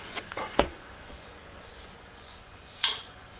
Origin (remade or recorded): remade